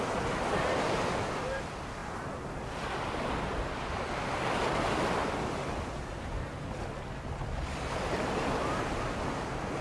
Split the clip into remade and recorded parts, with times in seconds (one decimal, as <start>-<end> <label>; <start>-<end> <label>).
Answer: 0.0-9.8 recorded